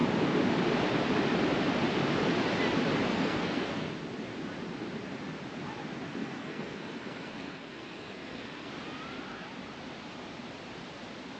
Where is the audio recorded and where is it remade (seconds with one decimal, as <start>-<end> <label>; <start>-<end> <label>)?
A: 0.0-3.1 recorded; 3.1-3.9 remade; 3.9-6.2 recorded; 6.2-8.7 remade; 8.7-11.4 recorded